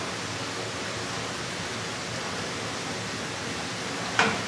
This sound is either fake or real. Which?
real